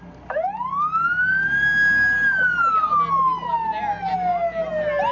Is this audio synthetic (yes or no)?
no